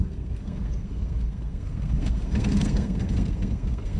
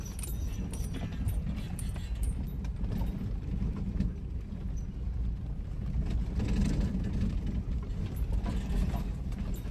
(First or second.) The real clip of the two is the second